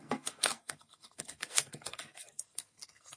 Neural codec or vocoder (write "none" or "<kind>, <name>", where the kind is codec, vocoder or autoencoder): codec, SNAC